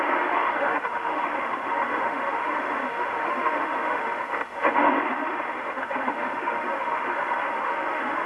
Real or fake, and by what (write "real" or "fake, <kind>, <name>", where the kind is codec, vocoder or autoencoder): fake, autoencoder, DAC-VAE